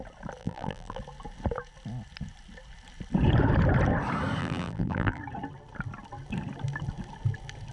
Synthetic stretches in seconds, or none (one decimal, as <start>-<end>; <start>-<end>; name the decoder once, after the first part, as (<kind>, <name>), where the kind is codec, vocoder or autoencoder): 0.4-1.0 (vocoder, BigVGAN v2); 4.4-5.2